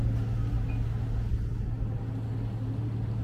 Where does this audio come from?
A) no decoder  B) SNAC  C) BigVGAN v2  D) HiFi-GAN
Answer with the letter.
A